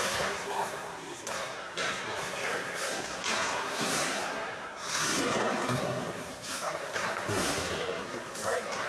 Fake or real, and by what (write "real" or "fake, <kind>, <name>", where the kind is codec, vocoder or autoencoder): fake, codec, SNAC